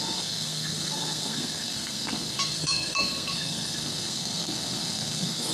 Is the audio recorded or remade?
remade